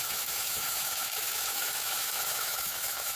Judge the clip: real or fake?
fake